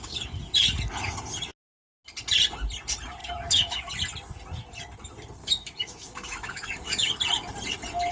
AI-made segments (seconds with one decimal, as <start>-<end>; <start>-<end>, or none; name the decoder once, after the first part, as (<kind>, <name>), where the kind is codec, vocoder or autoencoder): 3.2-3.9 (autoencoder, DAC-VAE); 5.4-7.1